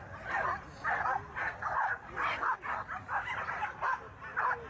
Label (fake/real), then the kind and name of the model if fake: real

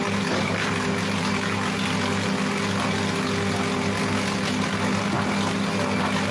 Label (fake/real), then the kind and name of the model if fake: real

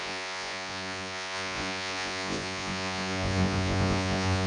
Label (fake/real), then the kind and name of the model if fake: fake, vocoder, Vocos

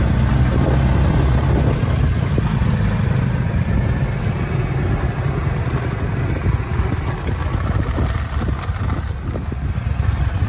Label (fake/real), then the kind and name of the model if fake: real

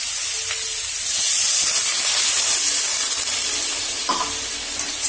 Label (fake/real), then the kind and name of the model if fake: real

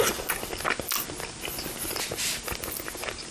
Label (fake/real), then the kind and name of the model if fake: real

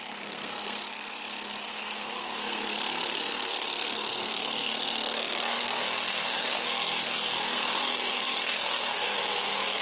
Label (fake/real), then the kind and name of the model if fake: fake, codec, SNAC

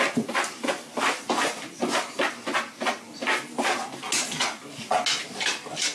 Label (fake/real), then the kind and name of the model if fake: real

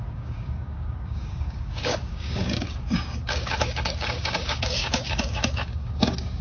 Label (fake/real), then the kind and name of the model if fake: fake, codec, DAC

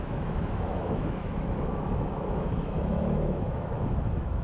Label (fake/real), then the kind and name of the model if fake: fake, autoencoder, DAC-VAE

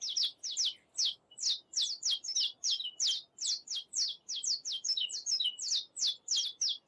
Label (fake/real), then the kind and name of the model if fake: real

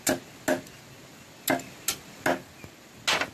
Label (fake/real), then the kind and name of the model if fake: real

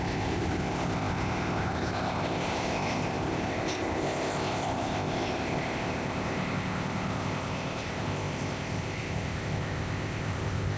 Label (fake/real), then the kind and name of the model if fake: fake, codec, ZipCodec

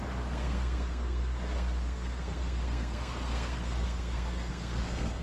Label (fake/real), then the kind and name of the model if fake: fake, codec, SNAC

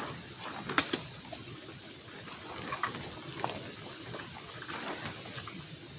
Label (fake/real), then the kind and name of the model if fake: real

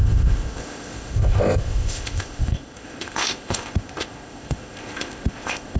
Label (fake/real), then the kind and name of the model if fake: fake, codec, ZipCodec